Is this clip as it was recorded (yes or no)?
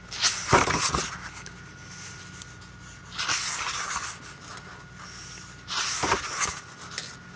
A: yes